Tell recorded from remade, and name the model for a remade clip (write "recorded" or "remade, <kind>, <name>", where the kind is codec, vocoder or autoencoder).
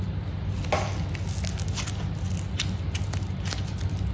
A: recorded